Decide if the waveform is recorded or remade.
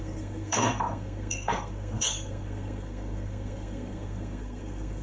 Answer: remade